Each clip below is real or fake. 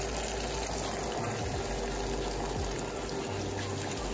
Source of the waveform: real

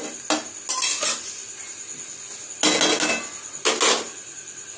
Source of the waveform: real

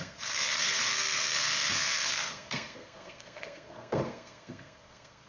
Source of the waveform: fake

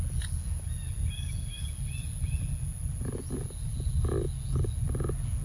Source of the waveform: real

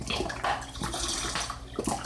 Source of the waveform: real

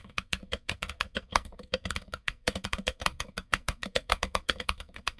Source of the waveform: fake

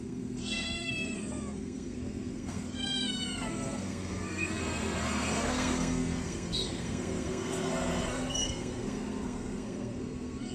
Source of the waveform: fake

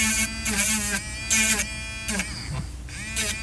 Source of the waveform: real